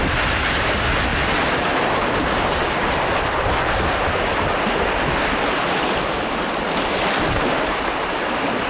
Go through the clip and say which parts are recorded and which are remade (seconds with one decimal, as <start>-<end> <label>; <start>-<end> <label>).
0.0-8.7 recorded